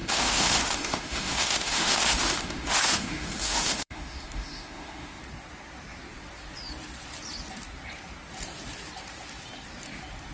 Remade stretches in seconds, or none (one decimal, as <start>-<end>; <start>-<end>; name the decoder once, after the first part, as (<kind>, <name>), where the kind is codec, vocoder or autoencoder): 0.0-5.2 (autoencoder, DAC-VAE)